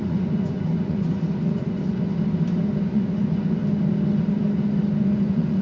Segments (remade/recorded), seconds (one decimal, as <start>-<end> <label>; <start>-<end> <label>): 0.0-2.1 remade; 2.1-2.8 recorded; 2.8-3.6 remade; 3.6-5.0 recorded; 5.0-5.6 remade